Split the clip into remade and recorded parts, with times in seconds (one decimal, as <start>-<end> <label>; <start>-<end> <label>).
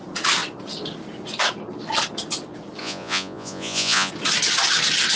0.0-2.8 recorded; 2.8-4.1 remade; 4.1-5.2 recorded